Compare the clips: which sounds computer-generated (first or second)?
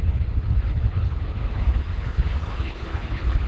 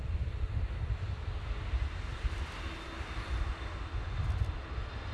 first